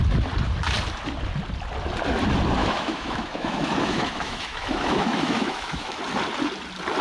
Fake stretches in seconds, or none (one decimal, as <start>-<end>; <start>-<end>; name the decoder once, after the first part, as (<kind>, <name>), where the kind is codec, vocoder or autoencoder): 2.6-6.0 (autoencoder, DAC-VAE)